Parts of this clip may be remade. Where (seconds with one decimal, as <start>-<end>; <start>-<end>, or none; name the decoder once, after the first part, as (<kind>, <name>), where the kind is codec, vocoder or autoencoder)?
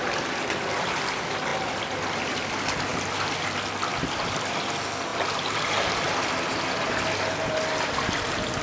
1.5-2.4 (vocoder, BigVGAN v2); 5.1-7.9